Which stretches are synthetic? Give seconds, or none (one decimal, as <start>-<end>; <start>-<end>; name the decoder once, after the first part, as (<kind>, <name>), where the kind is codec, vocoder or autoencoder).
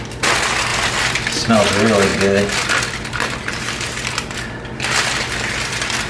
none